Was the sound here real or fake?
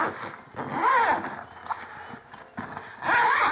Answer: real